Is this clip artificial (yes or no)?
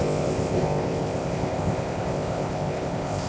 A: yes